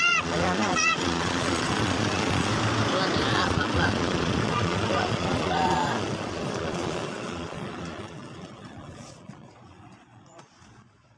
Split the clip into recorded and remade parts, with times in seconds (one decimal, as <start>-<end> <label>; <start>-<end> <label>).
0.0-2.5 remade; 2.5-3.3 recorded; 3.3-11.2 remade